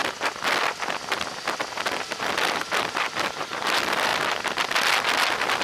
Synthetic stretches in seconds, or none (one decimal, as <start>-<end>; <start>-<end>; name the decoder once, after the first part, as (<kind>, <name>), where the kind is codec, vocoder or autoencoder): 3.4-4.1 (vocoder, BigVGAN v2)